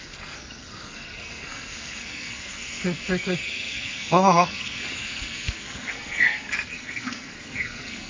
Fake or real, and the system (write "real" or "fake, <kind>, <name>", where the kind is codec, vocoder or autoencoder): fake, codec, SNAC